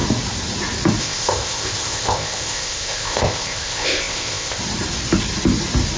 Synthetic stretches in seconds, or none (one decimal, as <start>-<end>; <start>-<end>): 1.0-4.6